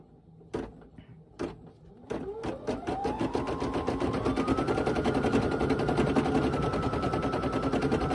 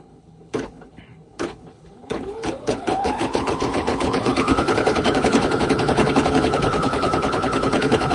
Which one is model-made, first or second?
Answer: second